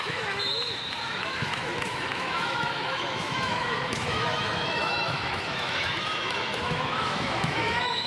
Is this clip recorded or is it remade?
remade